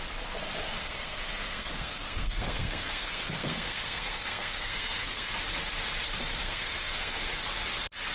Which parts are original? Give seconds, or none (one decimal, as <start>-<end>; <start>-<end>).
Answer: 0.0-0.8; 5.3-6.4; 7.3-8.1